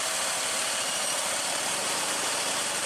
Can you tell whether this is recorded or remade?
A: recorded